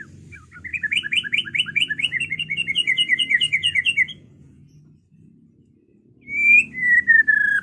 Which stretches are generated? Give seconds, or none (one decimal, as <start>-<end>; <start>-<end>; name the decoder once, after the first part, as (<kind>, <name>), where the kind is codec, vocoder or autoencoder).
0.7-4.8 (vocoder, Vocos)